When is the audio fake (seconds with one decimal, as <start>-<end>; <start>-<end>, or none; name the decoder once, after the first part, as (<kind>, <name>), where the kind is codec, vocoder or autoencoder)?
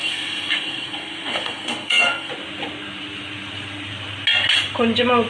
0.0-2.3 (codec, SNAC)